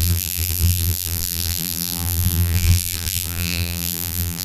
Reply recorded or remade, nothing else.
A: remade